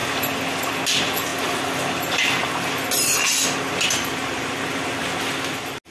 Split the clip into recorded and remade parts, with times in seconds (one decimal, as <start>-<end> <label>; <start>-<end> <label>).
0.0-5.9 recorded